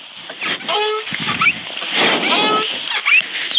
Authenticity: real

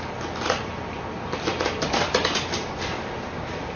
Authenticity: real